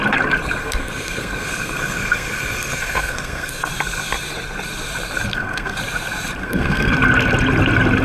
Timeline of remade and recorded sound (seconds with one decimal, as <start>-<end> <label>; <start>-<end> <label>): 0.0-0.6 recorded; 0.6-3.7 remade; 3.7-5.3 recorded; 5.3-5.8 remade; 5.8-6.4 recorded; 6.4-6.9 remade; 6.9-8.0 recorded